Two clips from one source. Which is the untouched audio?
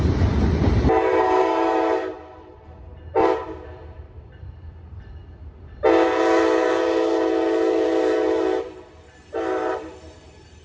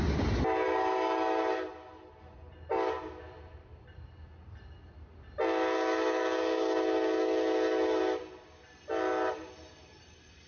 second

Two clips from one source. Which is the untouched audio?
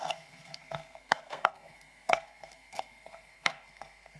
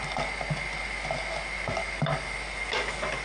second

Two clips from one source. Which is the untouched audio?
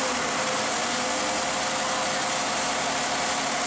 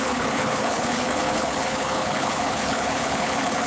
first